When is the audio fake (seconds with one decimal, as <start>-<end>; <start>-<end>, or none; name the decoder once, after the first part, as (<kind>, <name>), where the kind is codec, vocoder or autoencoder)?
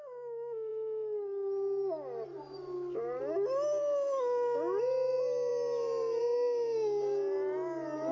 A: none